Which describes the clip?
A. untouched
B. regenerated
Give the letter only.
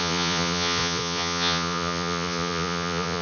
B